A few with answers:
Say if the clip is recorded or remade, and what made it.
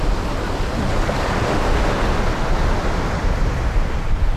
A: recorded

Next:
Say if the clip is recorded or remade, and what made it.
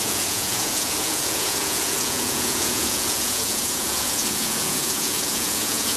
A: remade, vocoder, Vocos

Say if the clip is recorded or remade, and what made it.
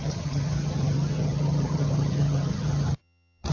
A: remade, vocoder, HiFi-GAN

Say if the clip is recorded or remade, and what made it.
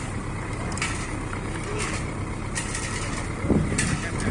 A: recorded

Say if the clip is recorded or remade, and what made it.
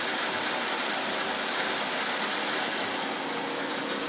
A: recorded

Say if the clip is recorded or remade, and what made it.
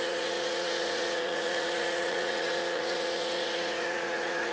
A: remade, vocoder, Vocos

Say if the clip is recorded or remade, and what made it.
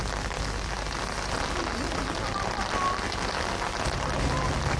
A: recorded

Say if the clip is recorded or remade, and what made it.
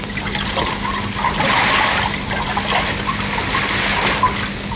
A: recorded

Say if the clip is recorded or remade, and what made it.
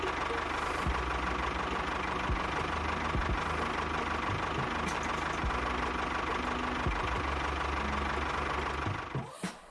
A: recorded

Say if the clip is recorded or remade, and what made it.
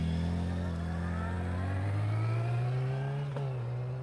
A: recorded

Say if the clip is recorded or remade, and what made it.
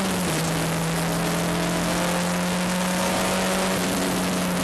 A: recorded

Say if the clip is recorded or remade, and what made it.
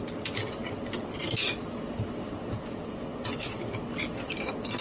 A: recorded